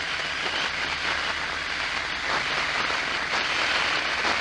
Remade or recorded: recorded